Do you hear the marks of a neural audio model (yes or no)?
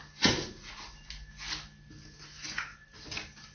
no